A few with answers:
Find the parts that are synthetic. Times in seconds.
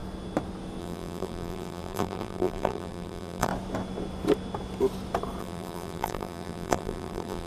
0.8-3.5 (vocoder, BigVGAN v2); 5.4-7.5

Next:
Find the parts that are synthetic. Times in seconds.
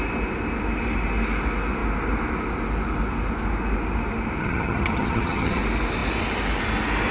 4.4-5.6 (vocoder, HiFi-GAN)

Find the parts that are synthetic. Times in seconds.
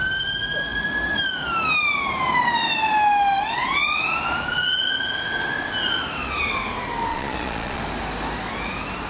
7.1-7.8 (vocoder, Vocos)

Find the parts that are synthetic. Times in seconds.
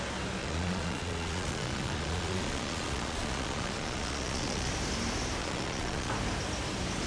0.4-4.7 (vocoder, Vocos); 5.4-6.1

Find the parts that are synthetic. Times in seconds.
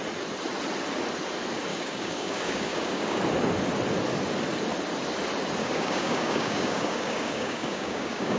1.7-3.2 (codec, DAC); 5.6-8.4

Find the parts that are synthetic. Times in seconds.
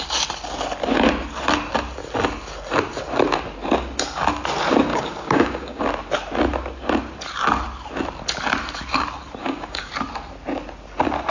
4.9-5.8 (codec, DAC); 9.4-9.9